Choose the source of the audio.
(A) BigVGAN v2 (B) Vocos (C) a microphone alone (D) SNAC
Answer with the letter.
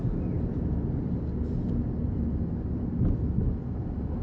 C